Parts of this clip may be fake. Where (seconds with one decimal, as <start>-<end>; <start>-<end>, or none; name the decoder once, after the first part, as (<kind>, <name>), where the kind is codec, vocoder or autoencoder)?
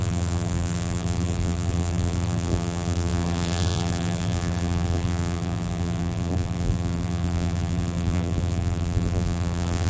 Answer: 0.0-9.9 (vocoder, BigVGAN v2)